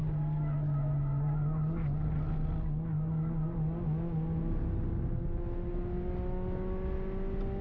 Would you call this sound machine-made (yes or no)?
no